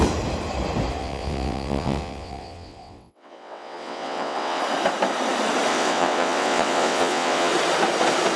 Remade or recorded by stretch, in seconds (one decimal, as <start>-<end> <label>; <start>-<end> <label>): 0.0-1.0 recorded; 1.0-4.6 remade; 4.6-5.7 recorded; 5.7-7.5 remade; 7.5-8.4 recorded